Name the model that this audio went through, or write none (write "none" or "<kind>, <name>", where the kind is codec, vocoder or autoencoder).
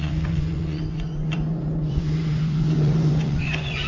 vocoder, Vocos